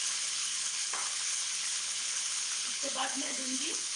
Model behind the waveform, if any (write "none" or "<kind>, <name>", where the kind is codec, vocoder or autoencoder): codec, HILCodec